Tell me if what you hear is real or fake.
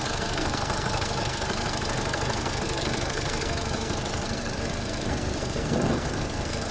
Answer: fake